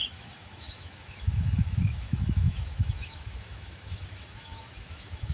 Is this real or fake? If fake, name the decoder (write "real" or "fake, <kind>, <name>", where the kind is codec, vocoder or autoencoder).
fake, autoencoder, DAC-VAE